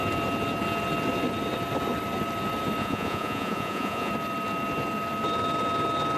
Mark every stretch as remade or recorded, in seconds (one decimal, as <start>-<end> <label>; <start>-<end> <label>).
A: 0.0-2.8 recorded; 2.8-4.1 remade; 4.1-6.2 recorded